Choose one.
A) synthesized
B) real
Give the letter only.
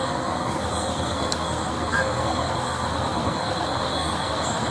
A